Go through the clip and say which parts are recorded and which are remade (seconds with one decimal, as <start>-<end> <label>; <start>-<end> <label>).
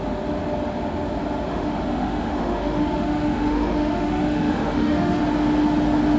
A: 0.0-1.5 recorded; 1.5-5.2 remade; 5.2-6.2 recorded